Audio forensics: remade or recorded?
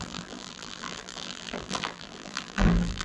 remade